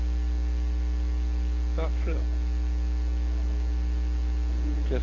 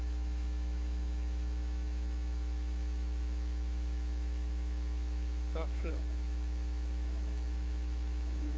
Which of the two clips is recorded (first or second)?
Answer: first